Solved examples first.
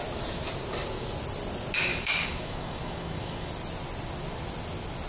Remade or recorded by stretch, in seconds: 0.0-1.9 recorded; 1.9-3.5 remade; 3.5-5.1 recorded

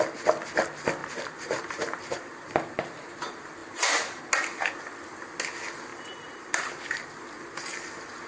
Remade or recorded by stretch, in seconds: 0.0-1.0 recorded; 1.0-3.0 remade; 3.0-3.6 recorded; 3.6-4.2 remade; 4.2-5.9 recorded; 5.9-6.7 remade; 6.7-8.3 recorded

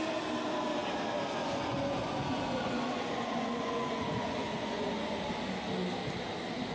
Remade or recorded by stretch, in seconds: 0.0-1.4 recorded; 1.4-5.2 remade; 5.2-6.7 recorded

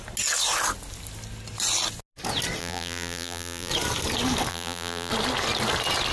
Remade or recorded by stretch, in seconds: 0.0-2.6 recorded; 2.6-3.7 remade; 3.7-4.5 recorded; 4.5-5.1 remade; 5.1-6.1 recorded

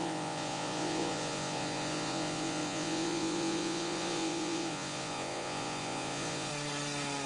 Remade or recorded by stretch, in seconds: 0.0-6.5 remade; 6.5-7.3 recorded

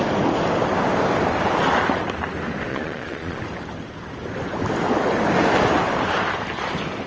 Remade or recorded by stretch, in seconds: 0.0-2.7 recorded; 2.7-3.4 remade; 3.4-7.1 recorded